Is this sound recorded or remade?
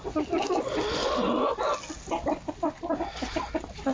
recorded